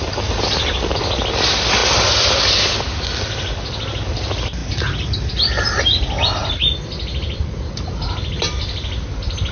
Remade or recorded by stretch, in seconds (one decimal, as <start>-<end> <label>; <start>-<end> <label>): 0.0-9.5 recorded